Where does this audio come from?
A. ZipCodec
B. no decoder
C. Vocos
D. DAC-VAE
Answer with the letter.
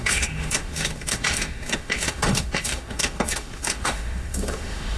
D